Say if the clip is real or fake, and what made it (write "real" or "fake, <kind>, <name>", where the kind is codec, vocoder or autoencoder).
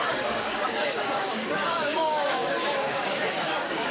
fake, codec, DAC